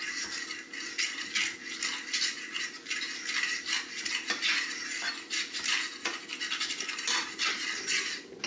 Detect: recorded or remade recorded